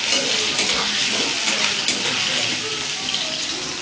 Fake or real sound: real